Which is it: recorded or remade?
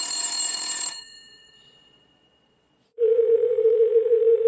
remade